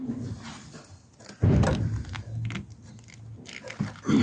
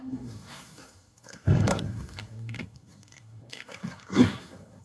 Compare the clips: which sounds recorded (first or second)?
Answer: first